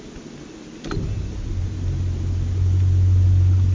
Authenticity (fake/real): real